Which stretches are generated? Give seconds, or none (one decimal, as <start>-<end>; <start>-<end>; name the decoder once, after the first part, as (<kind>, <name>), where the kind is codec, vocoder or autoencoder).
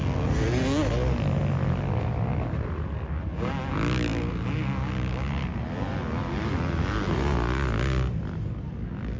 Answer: none